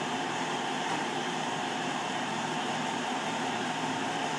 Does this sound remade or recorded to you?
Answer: remade